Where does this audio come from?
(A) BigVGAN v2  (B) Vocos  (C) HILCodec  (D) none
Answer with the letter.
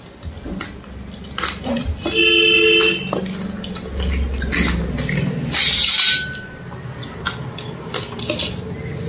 D